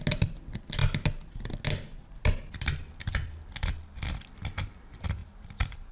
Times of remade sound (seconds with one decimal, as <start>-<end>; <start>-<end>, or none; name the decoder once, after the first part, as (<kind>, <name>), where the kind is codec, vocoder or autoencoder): 5.2-5.9 (vocoder, BigVGAN v2)